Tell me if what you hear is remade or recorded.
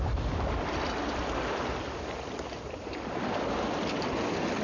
recorded